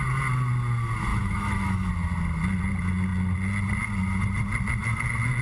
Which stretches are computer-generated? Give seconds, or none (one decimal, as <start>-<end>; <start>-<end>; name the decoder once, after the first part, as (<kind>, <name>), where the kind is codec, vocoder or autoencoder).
1.1-1.9 (autoencoder, DAC-VAE)